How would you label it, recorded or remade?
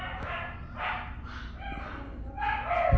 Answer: recorded